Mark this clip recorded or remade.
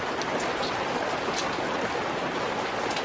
recorded